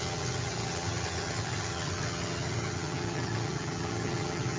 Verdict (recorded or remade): remade